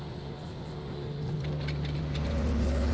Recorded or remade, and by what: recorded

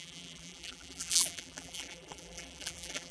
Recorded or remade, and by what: remade, vocoder, BigVGAN v2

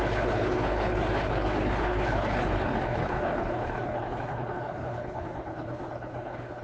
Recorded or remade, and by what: remade, codec, HILCodec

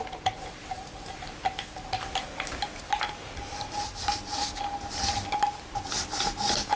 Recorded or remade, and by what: recorded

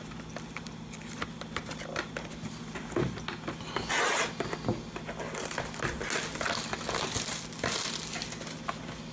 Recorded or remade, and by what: recorded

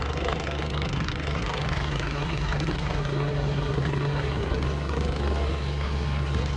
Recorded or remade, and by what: remade, codec, SNAC